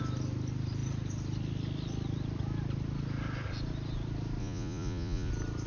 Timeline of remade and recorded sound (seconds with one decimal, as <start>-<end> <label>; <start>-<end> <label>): 0.0-4.4 recorded; 4.4-5.3 remade; 5.3-5.7 recorded